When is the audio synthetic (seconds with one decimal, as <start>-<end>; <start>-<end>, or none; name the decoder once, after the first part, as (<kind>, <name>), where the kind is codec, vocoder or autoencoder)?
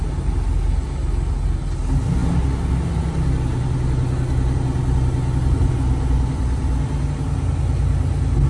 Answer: none